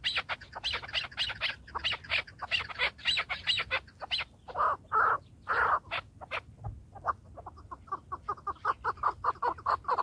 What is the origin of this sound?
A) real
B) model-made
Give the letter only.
A